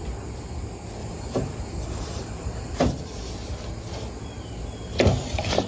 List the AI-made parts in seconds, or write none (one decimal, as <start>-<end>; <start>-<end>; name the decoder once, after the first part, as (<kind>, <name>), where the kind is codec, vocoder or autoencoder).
1.0-2.8 (vocoder, BigVGAN v2)